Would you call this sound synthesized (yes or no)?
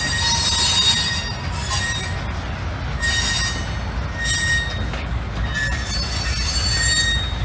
no